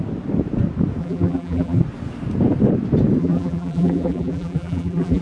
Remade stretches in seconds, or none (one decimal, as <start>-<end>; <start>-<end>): 1.0-1.8; 3.2-5.2